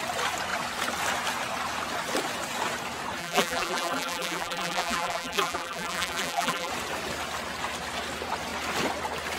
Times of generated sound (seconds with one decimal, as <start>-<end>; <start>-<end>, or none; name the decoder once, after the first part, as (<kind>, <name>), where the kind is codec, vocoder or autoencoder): 3.2-6.7 (vocoder, BigVGAN v2)